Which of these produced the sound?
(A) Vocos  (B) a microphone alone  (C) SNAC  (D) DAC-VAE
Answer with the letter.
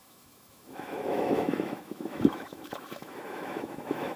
D